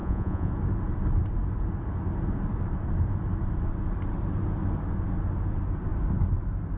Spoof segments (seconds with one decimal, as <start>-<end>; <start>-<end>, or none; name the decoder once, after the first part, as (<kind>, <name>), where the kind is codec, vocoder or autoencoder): 0.0-0.5 (vocoder, Vocos)